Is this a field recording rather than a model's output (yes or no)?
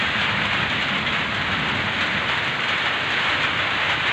yes